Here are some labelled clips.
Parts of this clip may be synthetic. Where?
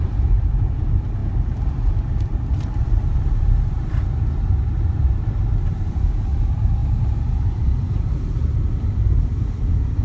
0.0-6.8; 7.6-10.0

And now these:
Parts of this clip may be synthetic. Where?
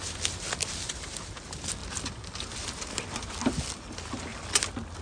1.8-3.3